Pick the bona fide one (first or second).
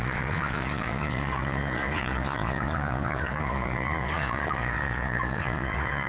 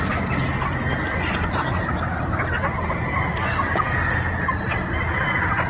second